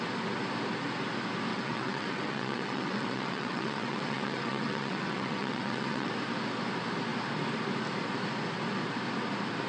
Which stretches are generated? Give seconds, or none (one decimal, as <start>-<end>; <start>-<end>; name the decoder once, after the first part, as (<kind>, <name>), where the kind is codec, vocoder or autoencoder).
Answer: 1.5-6.1 (vocoder, WaveNeXt)